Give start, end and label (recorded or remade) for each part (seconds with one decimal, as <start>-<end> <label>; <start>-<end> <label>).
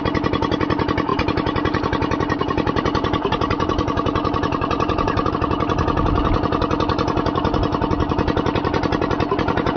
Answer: 0.0-1.1 recorded; 1.1-5.3 remade; 5.3-9.8 recorded